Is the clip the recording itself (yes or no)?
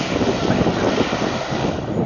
yes